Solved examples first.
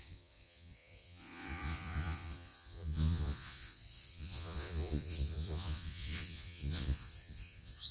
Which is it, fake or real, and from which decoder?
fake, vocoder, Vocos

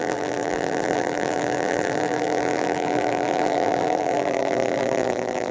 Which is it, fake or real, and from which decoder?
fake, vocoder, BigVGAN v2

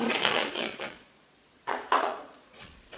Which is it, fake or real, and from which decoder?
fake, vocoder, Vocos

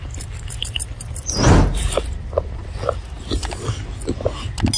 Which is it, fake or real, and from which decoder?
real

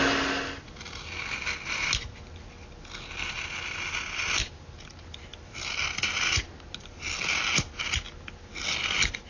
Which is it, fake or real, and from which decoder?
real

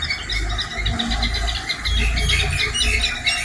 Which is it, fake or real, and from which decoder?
real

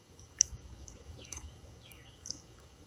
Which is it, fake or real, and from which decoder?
fake, codec, DAC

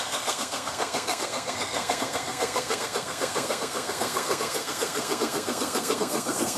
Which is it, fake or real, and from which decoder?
fake, codec, SNAC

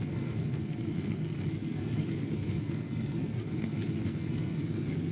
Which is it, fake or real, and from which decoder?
fake, codec, SNAC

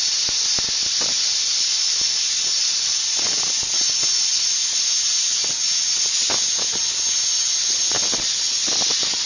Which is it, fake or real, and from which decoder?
real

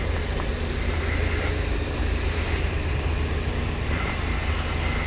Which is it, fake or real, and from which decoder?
real